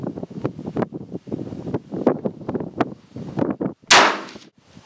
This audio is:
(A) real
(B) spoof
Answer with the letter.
A